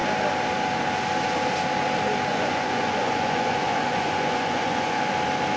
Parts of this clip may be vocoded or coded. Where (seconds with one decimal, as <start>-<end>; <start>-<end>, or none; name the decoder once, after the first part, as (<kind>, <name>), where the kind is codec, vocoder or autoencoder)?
2.3-5.0 (vocoder, Vocos)